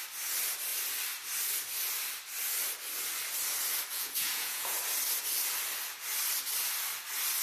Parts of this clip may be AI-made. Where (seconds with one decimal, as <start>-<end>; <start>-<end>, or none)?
3.9-4.8